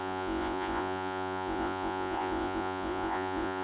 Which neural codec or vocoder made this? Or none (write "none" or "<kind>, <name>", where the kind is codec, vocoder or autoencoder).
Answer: vocoder, Vocos